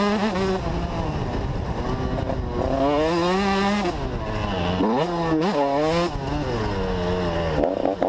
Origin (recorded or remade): recorded